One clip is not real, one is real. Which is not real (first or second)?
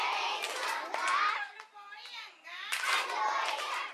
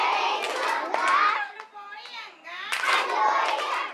first